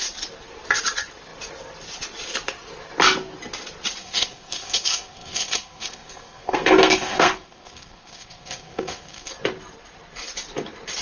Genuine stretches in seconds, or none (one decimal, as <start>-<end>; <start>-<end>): 0.0-4.0; 9.3-11.0

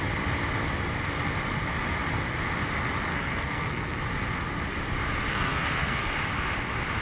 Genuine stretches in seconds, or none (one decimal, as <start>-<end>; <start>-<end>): 0.0-3.1; 4.0-5.3; 6.1-7.0

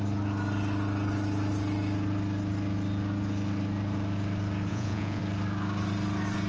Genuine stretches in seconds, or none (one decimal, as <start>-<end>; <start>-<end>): 0.0-4.7; 5.2-6.5

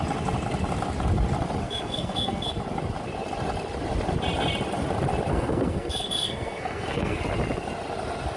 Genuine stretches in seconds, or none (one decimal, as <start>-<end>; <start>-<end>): 0.0-1.6; 2.5-5.3; 7.2-8.4

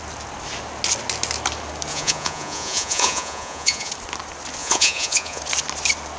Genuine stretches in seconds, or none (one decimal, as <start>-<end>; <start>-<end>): 0.0-1.9; 3.9-4.6; 5.4-6.2